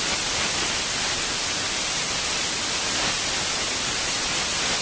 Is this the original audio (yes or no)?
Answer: yes